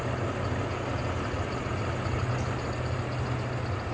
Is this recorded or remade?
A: recorded